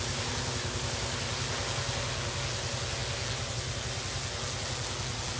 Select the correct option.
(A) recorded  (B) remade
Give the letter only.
A